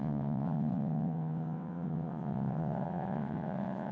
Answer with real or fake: fake